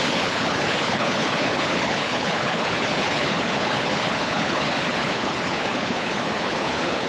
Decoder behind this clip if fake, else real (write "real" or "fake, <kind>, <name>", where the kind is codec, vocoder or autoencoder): fake, codec, HILCodec